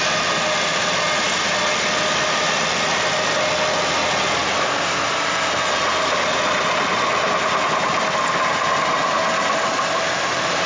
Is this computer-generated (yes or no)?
no